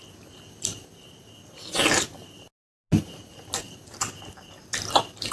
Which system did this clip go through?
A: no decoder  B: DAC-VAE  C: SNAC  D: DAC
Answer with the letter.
A